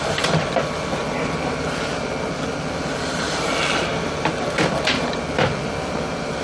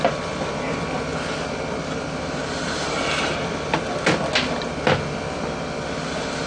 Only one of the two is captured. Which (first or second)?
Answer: second